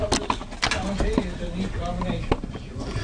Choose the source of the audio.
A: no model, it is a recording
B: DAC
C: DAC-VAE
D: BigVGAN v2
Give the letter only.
A